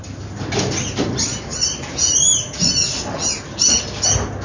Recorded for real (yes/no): yes